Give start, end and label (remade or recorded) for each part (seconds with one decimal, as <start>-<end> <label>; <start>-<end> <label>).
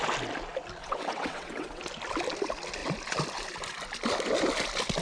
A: 0.0-0.8 recorded; 0.8-1.8 remade; 1.8-5.0 recorded